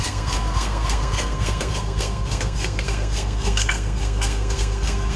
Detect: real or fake fake